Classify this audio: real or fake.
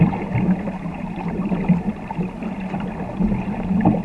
real